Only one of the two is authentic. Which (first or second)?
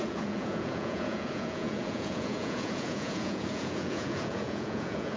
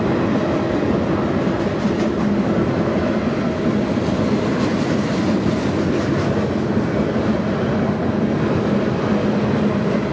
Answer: second